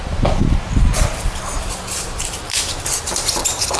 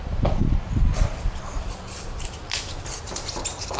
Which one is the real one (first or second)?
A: first